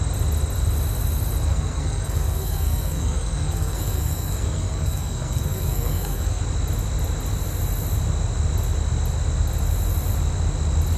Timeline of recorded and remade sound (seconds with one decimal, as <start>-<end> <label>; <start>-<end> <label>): 0.0-1.5 recorded; 1.5-6.4 remade; 6.4-11.0 recorded